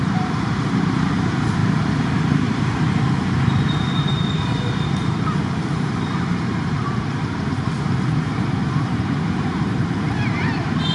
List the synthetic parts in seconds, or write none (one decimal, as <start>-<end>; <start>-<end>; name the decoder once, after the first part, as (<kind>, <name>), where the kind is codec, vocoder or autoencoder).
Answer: 0.0-10.9 (vocoder, BigVGAN v2)